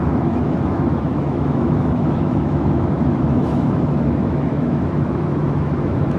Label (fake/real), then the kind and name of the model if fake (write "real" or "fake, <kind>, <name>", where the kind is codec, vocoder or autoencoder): fake, autoencoder, DAC-VAE